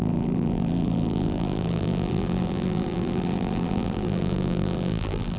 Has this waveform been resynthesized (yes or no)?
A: yes